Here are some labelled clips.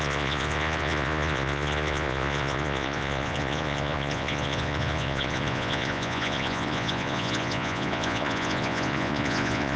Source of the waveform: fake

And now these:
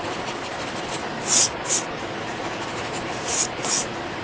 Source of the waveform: fake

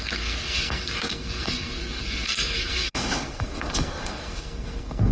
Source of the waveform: fake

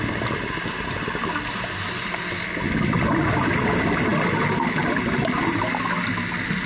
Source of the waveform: real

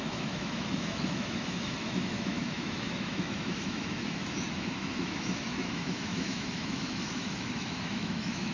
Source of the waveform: fake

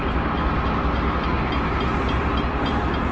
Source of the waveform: real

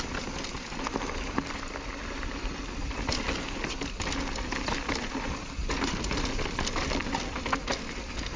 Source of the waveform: real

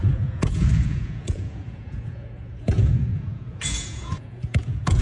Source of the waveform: fake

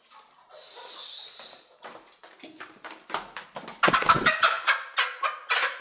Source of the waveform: real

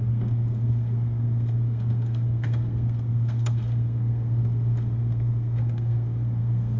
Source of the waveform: fake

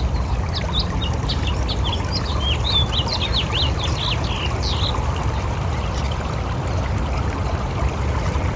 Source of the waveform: real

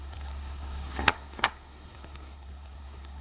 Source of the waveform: fake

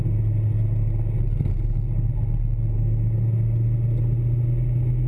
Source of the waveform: real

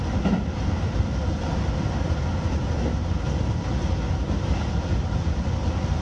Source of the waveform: real